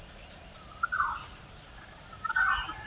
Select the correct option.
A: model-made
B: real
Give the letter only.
A